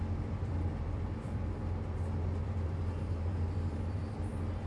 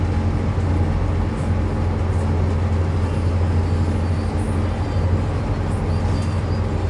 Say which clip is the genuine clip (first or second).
second